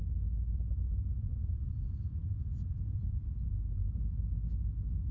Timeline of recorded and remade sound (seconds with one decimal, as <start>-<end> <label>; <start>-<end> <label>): 0.0-1.3 recorded; 1.3-3.5 remade; 3.5-5.1 recorded